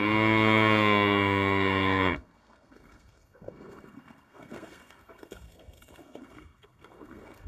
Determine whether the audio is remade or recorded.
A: remade